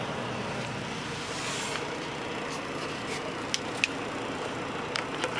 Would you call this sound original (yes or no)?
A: yes